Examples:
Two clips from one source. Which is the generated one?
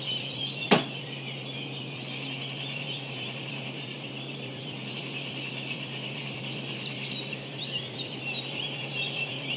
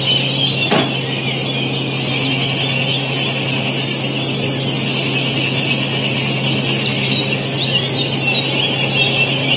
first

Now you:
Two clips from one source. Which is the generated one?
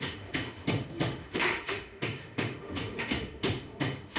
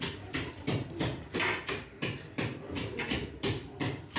first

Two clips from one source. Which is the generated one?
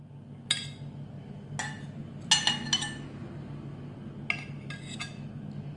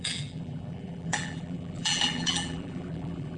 second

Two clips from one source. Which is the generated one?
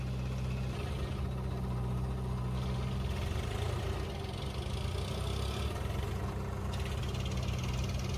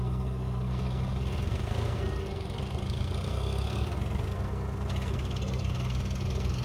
second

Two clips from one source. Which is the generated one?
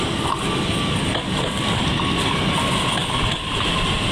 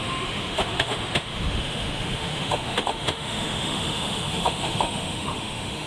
second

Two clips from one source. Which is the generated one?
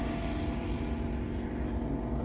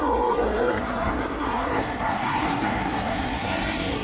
second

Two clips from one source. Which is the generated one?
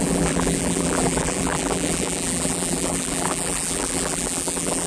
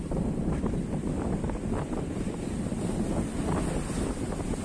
first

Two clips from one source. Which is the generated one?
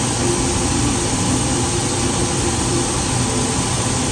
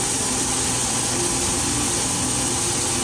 first